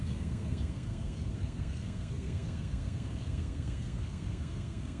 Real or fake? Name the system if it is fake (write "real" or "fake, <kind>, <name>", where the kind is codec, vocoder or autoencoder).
fake, codec, SNAC